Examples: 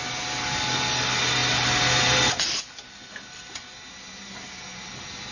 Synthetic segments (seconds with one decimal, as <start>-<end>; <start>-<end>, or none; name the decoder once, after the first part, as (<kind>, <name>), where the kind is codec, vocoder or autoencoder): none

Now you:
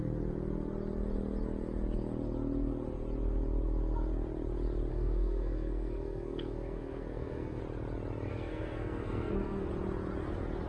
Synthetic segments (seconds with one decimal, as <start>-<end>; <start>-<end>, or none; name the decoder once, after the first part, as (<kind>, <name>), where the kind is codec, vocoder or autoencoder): 4.9-7.6 (codec, SNAC); 8.3-9.7

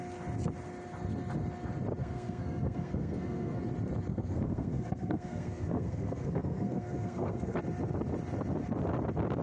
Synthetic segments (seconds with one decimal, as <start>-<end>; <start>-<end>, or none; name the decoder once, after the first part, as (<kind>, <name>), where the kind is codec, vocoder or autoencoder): 2.0-3.6 (codec, SNAC); 4.1-7.6

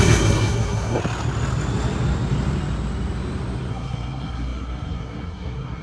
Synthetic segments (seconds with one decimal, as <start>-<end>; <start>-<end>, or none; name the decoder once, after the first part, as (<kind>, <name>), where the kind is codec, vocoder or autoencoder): 0.0-1.0 (codec, SNAC); 3.7-5.8

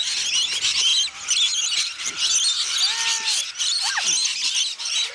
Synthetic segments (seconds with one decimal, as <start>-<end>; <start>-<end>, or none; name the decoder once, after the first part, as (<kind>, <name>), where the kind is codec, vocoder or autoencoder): none

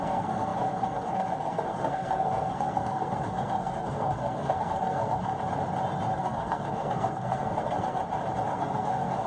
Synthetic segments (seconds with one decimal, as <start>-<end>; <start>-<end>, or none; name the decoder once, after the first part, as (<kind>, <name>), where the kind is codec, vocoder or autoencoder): 0.0-5.3 (codec, SNAC); 6.2-8.0; 8.5-9.3